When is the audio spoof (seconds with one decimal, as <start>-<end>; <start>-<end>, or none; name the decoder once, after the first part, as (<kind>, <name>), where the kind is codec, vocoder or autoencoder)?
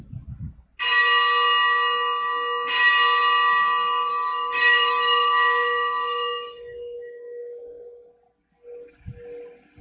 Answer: 4.1-8.1 (codec, DAC)